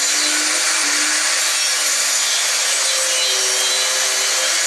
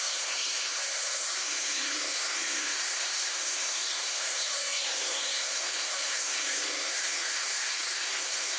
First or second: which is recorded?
first